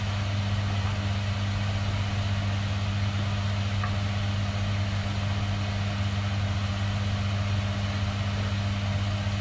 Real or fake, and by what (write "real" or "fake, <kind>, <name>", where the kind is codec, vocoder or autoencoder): real